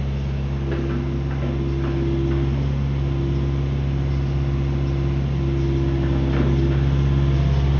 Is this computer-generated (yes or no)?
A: no